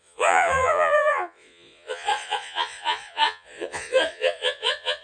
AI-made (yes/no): yes